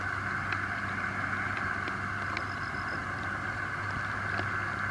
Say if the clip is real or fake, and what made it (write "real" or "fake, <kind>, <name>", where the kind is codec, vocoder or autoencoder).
real